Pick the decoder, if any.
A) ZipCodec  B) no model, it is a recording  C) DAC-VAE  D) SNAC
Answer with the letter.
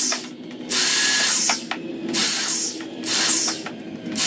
B